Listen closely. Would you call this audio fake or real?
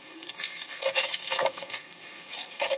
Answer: fake